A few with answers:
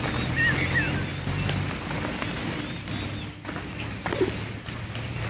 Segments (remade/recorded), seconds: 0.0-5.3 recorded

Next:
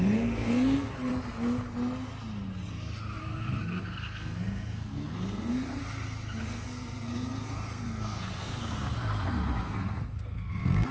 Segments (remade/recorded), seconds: 0.0-1.1 remade; 1.1-3.2 recorded; 3.2-5.8 remade; 5.8-6.4 recorded; 6.4-10.9 remade